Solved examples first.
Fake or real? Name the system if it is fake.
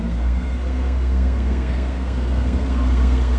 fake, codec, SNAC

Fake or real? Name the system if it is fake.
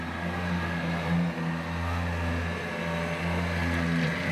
real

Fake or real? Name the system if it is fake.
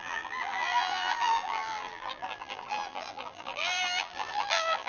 fake, vocoder, BigVGAN v2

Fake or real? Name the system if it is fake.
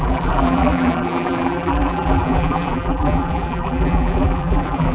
fake, vocoder, BigVGAN v2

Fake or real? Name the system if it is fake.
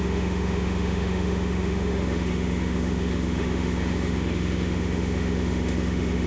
fake, autoencoder, DAC-VAE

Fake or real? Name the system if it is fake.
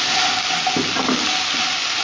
real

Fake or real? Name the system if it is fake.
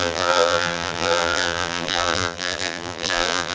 fake, vocoder, BigVGAN v2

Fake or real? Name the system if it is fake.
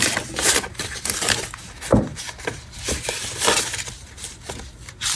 real